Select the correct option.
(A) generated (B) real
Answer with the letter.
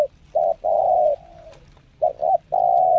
B